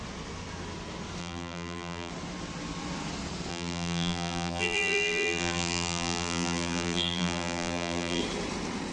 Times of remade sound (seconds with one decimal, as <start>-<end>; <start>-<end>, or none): 1.2-2.1; 3.5-8.2